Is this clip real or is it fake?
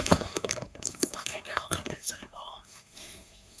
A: fake